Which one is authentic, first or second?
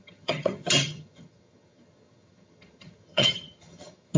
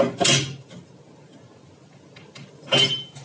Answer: second